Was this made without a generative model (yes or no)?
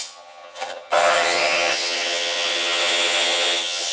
no